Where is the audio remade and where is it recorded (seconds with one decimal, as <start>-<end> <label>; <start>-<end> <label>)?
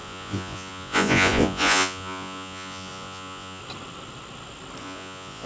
0.0-3.6 remade; 3.6-4.8 recorded; 4.8-5.5 remade